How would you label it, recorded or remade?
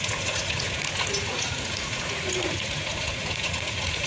remade